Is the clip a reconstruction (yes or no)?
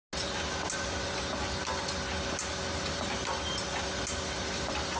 no